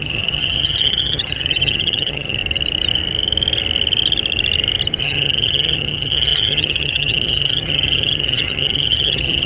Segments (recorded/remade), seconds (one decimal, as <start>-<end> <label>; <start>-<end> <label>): 0.0-2.4 remade; 2.4-5.0 recorded; 5.0-9.5 remade